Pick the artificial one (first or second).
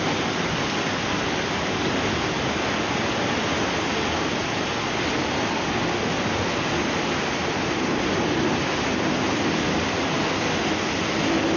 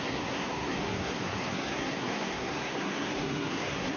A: second